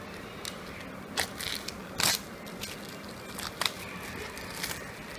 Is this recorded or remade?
recorded